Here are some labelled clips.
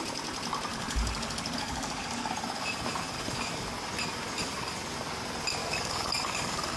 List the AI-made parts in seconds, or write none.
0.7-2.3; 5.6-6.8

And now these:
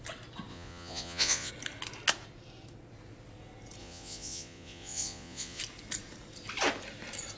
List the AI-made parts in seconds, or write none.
0.5-1.5; 3.8-5.6

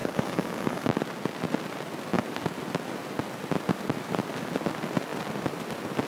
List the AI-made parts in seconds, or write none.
0.0-0.9

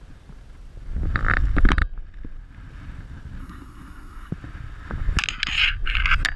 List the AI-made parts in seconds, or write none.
3.4-4.3